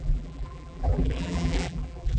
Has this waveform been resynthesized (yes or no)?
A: yes